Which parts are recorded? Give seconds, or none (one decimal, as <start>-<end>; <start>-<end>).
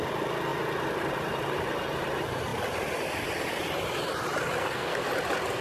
0.0-4.6; 5.1-5.6